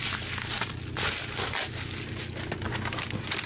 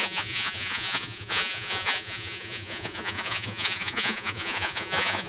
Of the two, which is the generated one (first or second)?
second